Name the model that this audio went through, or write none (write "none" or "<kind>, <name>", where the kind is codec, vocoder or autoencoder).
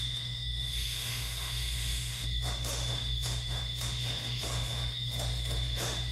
autoencoder, DAC-VAE